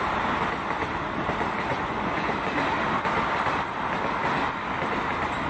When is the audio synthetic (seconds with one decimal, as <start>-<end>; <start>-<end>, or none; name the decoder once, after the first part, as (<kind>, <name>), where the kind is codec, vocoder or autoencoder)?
1.7-2.3 (vocoder, Vocos)